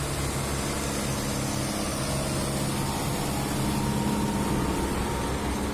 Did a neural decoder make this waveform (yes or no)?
no